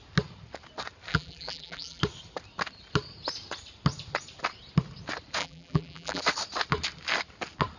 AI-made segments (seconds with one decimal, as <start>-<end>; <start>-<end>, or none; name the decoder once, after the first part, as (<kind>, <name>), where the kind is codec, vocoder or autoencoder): 1.1-2.0 (vocoder, BigVGAN v2); 5.4-6.2